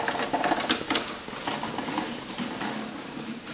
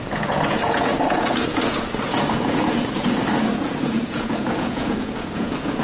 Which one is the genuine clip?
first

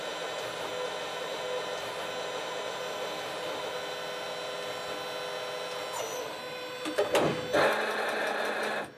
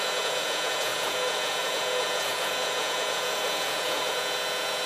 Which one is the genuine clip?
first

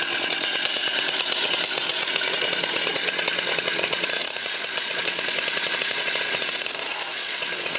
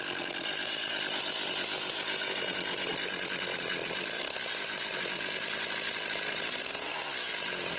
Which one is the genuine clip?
second